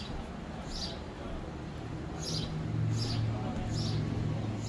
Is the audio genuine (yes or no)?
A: yes